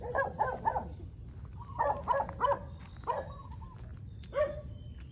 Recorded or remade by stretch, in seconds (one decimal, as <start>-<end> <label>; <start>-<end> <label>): 0.0-5.1 recorded